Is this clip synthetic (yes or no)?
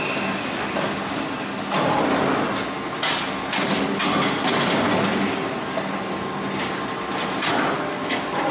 no